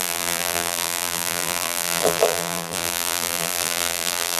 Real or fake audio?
fake